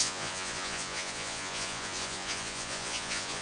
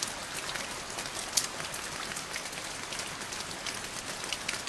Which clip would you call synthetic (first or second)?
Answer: first